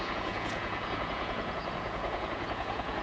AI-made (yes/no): yes